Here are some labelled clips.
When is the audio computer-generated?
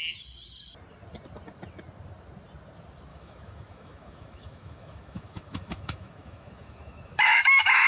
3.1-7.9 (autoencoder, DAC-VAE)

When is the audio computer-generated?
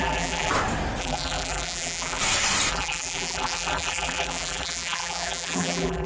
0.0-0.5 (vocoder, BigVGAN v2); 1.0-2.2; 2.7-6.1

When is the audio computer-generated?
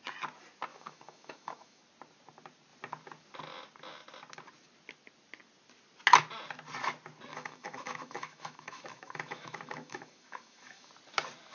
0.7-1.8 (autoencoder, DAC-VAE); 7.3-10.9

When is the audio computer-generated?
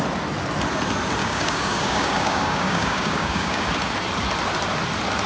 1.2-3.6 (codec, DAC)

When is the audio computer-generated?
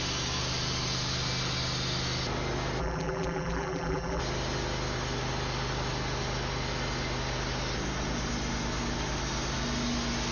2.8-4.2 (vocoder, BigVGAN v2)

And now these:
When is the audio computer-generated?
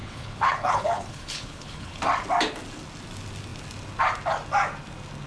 0.0-2.0 (codec, HILCodec)